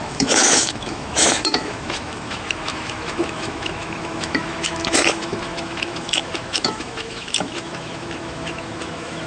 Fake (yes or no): yes